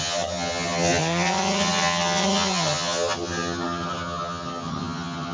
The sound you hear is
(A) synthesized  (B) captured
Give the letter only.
A